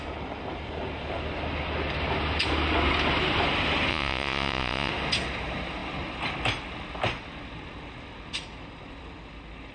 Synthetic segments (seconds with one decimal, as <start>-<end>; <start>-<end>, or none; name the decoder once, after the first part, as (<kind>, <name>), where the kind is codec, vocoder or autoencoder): 3.9-4.9 (vocoder, Vocos)